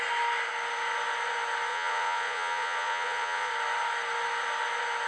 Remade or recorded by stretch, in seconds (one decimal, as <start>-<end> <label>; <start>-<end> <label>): 0.0-1.7 recorded; 1.7-3.5 remade; 3.5-5.1 recorded